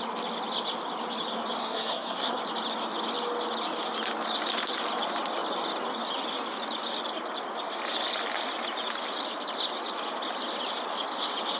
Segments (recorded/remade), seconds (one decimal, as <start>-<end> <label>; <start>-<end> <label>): 0.0-1.6 recorded; 1.6-2.4 remade; 2.4-11.6 recorded